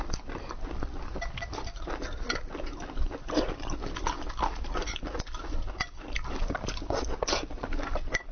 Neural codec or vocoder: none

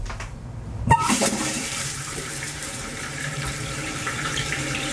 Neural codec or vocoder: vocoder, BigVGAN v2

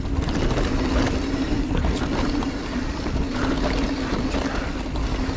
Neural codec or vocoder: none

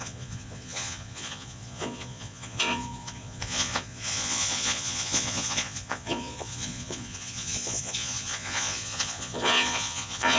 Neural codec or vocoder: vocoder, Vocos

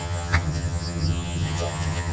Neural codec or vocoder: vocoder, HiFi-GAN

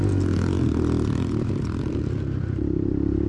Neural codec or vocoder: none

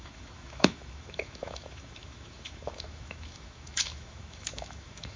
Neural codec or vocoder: autoencoder, DAC-VAE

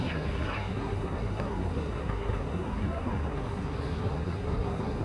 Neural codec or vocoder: codec, SNAC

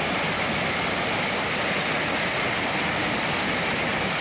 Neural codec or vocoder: none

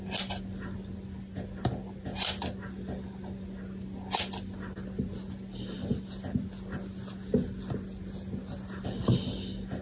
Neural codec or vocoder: none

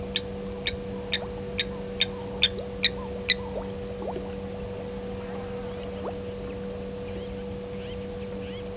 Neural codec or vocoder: none